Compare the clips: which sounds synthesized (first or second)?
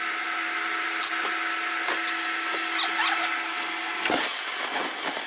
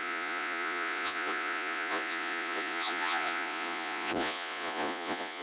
second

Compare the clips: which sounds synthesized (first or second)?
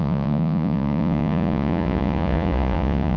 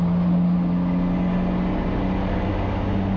first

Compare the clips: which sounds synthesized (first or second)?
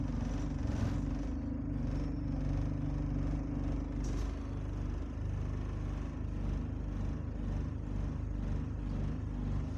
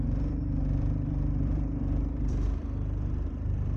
second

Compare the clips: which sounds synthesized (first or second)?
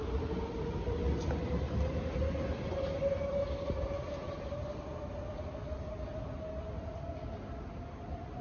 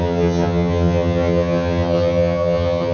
second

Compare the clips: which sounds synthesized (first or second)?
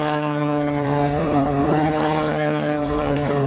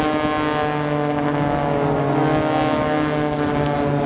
first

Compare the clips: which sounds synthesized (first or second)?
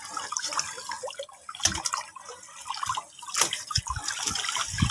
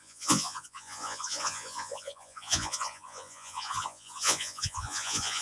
second